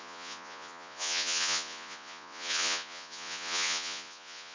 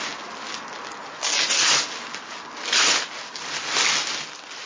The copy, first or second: first